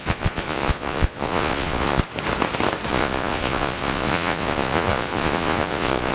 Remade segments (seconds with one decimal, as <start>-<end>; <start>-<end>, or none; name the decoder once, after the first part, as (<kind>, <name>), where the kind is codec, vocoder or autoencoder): 0.0-2.0 (vocoder, Vocos); 2.9-6.1